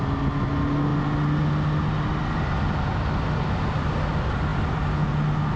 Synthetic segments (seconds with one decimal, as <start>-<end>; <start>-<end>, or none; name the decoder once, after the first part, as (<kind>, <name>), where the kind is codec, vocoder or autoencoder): none